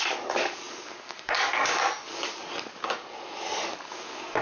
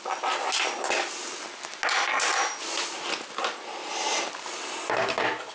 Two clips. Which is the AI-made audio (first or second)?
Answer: first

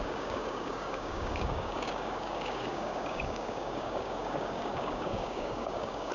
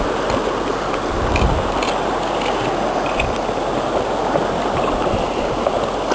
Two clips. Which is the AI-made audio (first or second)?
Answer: first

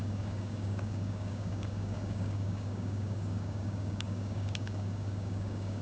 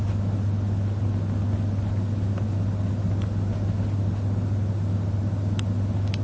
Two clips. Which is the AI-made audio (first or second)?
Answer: first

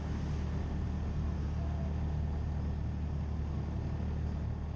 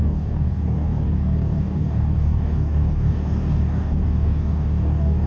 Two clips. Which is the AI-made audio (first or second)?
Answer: second